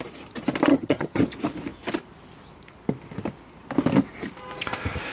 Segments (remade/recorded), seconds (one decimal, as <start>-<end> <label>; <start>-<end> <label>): 0.0-0.7 recorded; 0.7-1.2 remade; 1.2-5.1 recorded